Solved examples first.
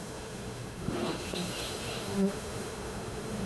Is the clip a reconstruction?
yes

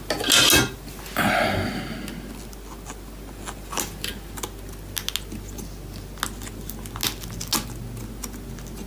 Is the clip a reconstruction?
no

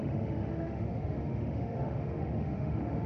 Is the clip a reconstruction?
yes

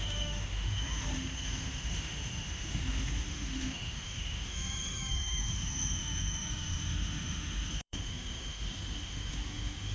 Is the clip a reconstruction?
yes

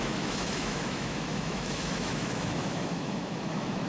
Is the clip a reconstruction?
yes